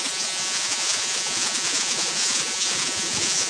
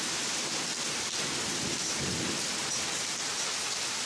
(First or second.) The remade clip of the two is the first